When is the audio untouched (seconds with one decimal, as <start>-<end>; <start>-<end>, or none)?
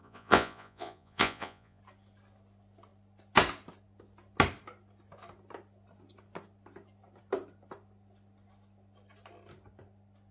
1.8-10.3